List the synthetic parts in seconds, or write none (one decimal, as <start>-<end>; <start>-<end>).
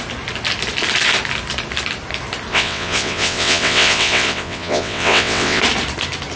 2.5-5.6